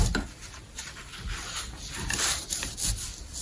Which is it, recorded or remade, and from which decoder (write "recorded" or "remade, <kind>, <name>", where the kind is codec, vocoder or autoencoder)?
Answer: recorded